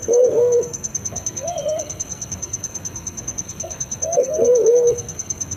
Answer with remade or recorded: remade